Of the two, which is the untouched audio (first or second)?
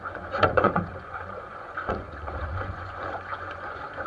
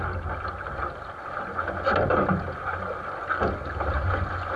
second